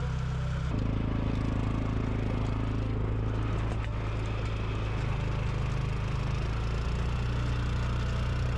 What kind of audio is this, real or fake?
real